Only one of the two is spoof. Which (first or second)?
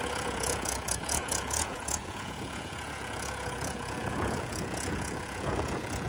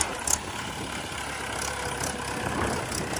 first